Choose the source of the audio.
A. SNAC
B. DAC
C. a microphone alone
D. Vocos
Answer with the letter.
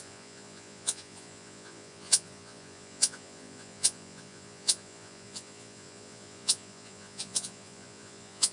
D